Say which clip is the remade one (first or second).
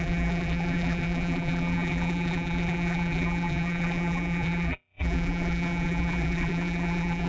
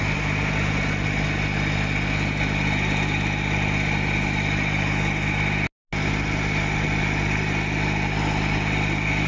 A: first